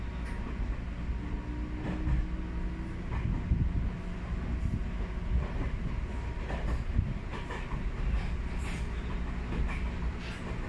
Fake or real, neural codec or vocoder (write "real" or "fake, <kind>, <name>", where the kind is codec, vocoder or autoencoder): real